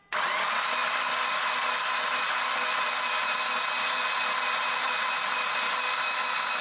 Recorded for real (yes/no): yes